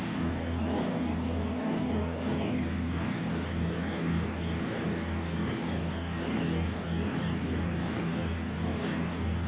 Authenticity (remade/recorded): remade